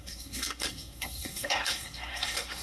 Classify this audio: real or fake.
fake